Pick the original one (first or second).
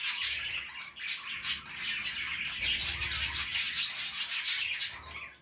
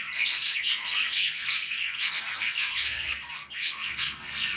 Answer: first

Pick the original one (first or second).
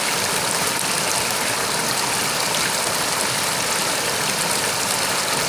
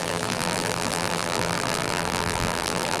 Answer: first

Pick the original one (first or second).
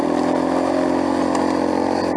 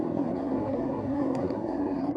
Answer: first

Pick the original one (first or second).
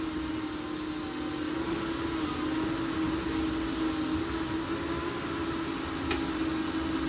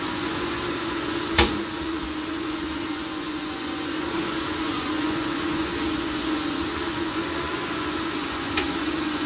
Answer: first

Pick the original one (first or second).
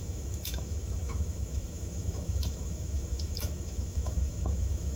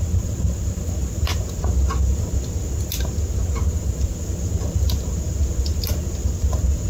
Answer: second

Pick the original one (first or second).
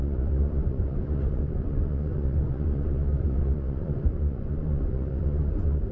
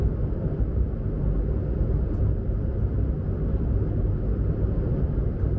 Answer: second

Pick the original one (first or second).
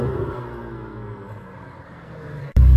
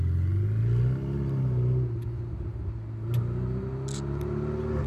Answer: second